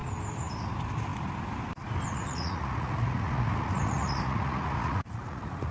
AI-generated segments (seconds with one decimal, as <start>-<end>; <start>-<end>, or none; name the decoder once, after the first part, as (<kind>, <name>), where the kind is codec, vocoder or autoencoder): 2.1-5.7 (vocoder, Vocos)